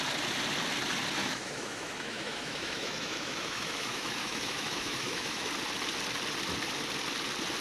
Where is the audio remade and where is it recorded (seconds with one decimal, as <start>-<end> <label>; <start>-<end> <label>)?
0.0-1.2 recorded; 1.2-5.5 remade; 5.5-7.6 recorded